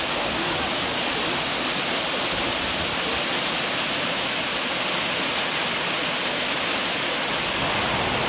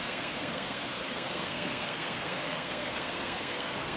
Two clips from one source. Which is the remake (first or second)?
second